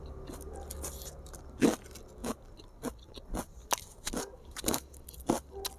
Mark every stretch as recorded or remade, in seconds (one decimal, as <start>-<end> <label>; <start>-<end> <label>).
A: 0.0-5.8 recorded